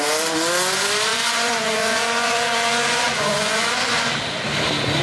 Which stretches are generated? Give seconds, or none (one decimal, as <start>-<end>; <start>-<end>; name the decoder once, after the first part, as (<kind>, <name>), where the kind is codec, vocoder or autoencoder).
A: 1.1-4.1 (vocoder, Vocos)